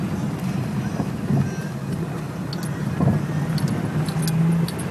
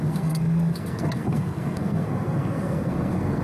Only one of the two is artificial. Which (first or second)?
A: second